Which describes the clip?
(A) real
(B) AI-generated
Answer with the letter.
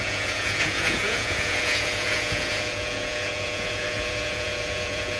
B